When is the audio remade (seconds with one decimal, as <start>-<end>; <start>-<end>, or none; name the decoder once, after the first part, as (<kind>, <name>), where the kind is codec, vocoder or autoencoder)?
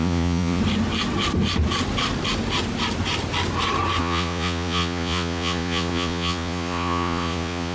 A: 0.0-0.6 (vocoder, Vocos); 4.0-7.7